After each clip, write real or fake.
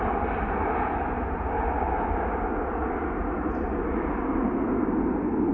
real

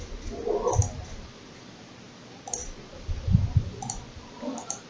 real